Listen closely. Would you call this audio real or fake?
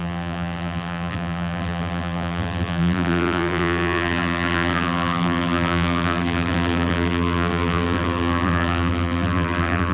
fake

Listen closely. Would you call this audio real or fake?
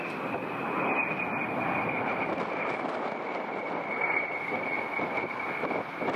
real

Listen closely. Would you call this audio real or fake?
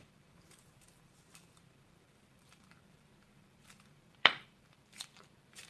fake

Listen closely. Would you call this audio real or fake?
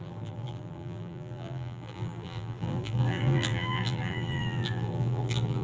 fake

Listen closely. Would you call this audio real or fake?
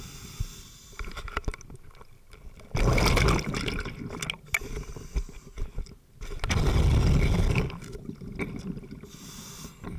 real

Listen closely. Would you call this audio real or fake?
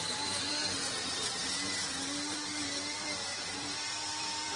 fake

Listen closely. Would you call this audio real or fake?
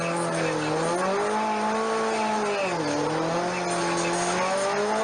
real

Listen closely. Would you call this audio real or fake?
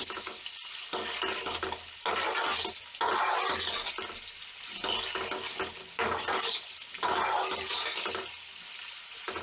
real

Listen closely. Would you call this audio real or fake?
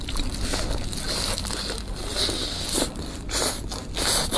real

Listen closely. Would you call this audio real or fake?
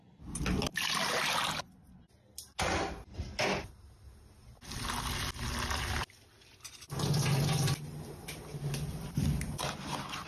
real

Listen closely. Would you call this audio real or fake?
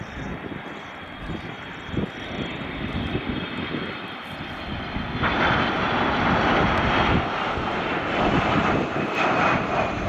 fake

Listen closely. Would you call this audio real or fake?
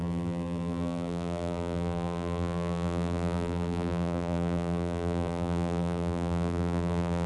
fake